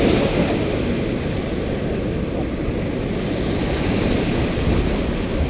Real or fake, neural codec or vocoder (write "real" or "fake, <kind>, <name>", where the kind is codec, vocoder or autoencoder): real